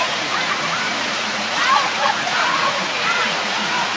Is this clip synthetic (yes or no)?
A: yes